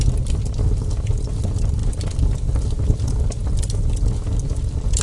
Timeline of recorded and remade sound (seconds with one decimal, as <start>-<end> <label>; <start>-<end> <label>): 0.0-5.0 recorded